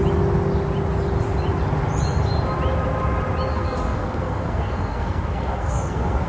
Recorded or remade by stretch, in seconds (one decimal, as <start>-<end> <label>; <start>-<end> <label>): 0.0-3.5 recorded; 3.5-6.3 remade